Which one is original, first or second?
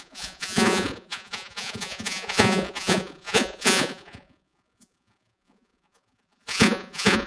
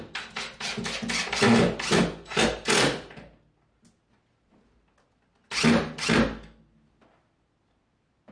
second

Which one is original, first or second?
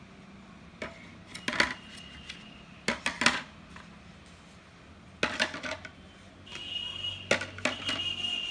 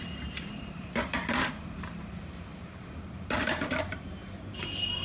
first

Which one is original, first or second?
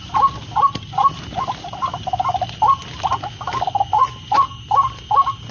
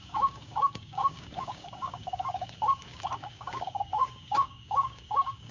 first